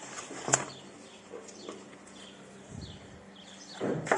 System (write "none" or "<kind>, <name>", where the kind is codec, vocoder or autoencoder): vocoder, BigVGAN v2